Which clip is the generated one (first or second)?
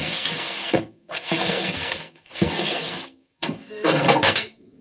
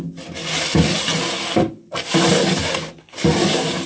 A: first